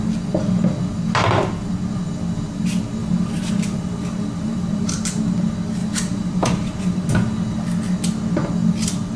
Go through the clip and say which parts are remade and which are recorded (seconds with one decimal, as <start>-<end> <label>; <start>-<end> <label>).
0.0-3.0 recorded; 3.0-4.9 remade; 4.9-5.8 recorded; 5.8-7.1 remade; 7.1-9.2 recorded